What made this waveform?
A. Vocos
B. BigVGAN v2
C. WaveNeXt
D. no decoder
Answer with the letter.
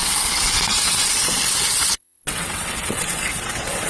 C